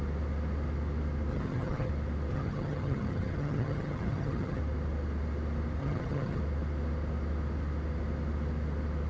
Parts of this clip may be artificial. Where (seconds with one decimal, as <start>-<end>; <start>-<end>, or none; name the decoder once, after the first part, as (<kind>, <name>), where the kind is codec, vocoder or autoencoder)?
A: 1.3-1.9 (vocoder, HiFi-GAN); 2.3-4.6; 5.8-6.4